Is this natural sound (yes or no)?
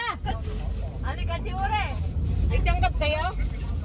yes